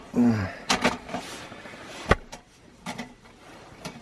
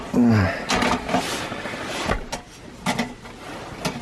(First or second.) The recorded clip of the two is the second